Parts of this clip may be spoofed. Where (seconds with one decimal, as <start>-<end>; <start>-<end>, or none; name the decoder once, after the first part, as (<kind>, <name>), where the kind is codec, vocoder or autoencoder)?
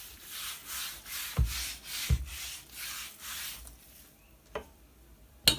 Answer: none